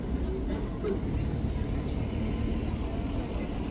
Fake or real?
real